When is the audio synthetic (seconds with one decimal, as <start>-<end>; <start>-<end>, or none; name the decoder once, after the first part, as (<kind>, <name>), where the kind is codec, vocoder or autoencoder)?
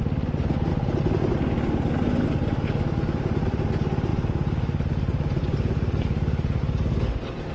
0.7-1.3 (vocoder, BigVGAN v2); 4.1-6.6